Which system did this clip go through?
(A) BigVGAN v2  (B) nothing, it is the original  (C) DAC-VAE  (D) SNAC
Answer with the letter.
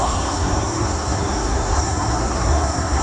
D